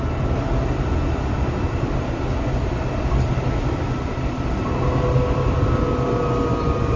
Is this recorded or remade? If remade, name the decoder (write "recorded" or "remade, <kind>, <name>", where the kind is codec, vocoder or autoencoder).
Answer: recorded